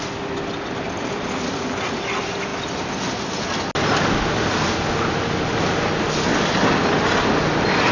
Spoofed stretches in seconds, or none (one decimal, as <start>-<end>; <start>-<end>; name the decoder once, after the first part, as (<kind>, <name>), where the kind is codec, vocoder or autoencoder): none